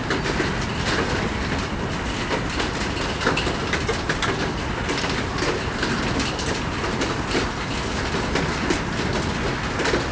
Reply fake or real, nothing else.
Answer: real